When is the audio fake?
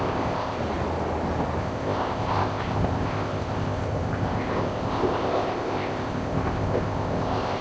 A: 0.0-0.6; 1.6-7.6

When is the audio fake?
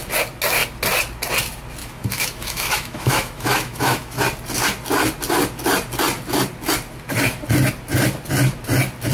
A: 1.8-4.2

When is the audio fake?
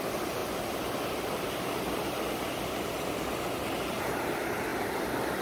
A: none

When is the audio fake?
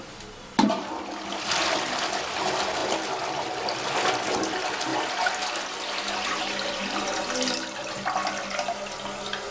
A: none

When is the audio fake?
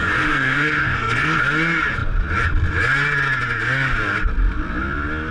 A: 0.0-1.4